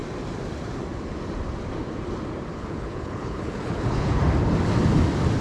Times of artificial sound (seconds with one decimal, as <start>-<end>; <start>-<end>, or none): 2.5-4.2